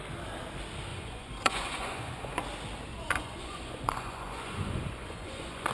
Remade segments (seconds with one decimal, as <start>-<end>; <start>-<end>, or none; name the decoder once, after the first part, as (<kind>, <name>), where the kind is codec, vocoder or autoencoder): 0.9-2.4 (vocoder, Vocos); 2.9-5.7